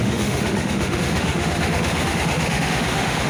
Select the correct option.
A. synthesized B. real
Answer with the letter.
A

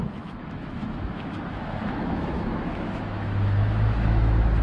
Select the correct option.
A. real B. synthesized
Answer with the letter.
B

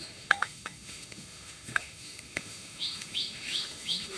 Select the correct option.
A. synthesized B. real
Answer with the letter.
A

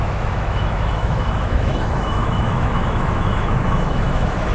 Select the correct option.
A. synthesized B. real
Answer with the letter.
A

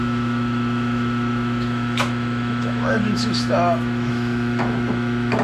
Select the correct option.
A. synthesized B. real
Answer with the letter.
A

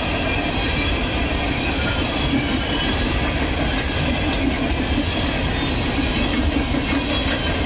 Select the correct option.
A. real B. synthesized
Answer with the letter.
A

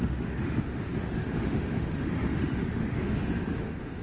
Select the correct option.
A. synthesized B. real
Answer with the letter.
A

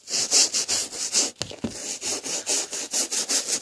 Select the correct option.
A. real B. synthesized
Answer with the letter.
A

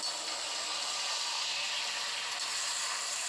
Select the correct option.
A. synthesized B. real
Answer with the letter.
B